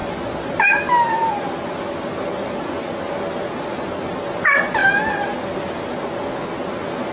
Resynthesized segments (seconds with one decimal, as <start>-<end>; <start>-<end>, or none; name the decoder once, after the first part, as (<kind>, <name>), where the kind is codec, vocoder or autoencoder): none